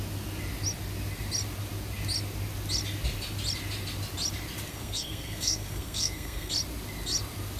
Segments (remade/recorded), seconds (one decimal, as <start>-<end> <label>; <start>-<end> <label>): 0.0-4.7 recorded; 4.7-6.5 remade; 6.5-7.6 recorded